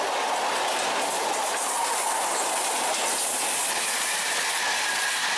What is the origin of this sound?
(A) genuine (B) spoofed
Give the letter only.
A